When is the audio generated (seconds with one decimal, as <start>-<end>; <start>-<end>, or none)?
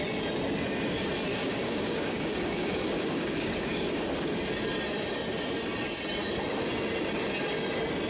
1.3-4.1